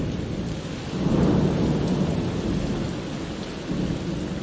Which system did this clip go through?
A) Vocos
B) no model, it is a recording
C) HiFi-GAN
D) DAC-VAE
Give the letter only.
B